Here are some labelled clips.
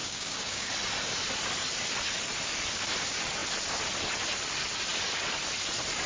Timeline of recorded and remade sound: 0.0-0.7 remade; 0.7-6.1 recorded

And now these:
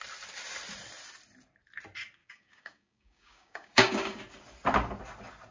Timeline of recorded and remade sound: 0.0-2.2 recorded; 2.2-4.2 remade; 4.2-5.5 recorded

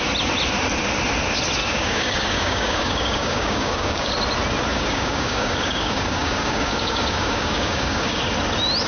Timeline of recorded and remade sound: 0.0-1.6 recorded; 1.6-4.1 remade; 4.1-4.7 recorded; 4.7-8.2 remade; 8.2-8.9 recorded

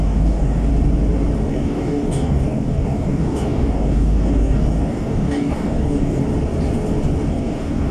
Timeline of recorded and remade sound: 0.0-0.7 remade; 0.7-1.5 recorded; 1.5-6.2 remade; 6.2-7.3 recorded; 7.3-7.9 remade